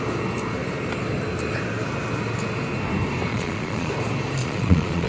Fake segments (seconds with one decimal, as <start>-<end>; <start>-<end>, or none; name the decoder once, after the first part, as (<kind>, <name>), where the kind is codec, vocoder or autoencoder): 3.3-3.9 (vocoder, Vocos); 4.4-5.1